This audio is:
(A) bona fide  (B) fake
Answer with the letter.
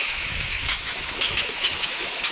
B